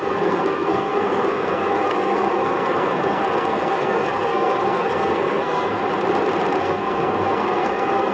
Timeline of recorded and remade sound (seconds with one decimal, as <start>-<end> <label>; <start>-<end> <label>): 0.0-5.8 remade; 5.8-6.6 recorded; 6.6-8.1 remade